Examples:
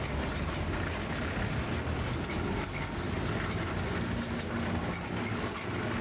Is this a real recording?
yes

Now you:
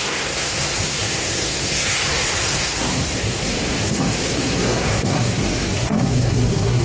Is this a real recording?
no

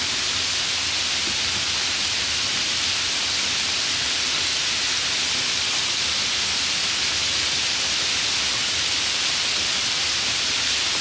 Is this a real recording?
yes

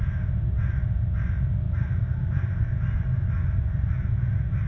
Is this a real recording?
yes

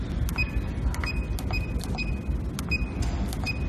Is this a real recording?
yes